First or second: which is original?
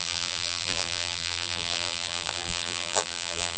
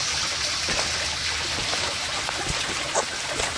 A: second